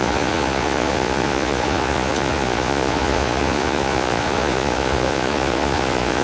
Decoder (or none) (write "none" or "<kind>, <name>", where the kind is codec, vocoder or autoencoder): vocoder, Vocos